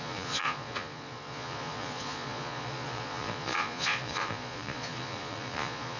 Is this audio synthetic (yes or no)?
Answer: yes